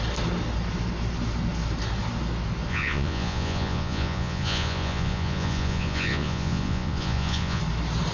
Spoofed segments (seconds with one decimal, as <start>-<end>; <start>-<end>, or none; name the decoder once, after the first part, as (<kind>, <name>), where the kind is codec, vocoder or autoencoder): 2.7-7.6 (vocoder, Vocos)